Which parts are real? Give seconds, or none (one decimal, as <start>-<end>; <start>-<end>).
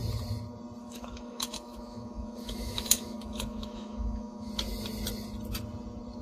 0.0-0.8; 4.5-6.2